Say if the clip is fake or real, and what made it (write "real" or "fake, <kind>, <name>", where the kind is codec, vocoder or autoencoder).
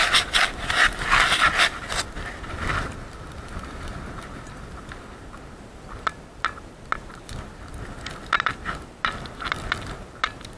real